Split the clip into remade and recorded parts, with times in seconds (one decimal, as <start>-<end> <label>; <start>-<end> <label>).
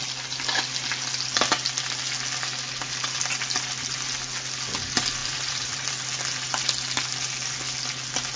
0.0-5.2 recorded; 5.2-5.9 remade; 5.9-8.4 recorded